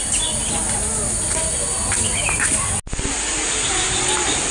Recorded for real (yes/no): yes